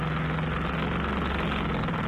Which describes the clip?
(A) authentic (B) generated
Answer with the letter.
A